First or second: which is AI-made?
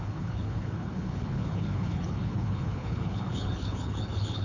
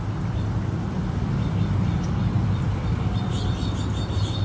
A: first